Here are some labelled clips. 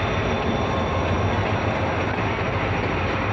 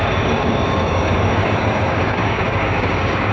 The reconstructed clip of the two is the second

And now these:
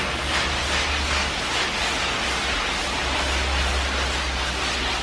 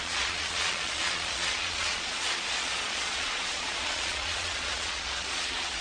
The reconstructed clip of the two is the second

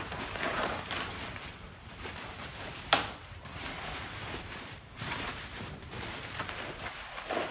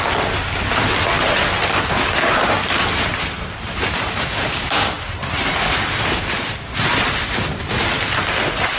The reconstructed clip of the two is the first